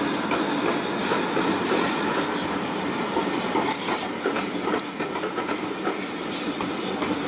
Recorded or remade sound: recorded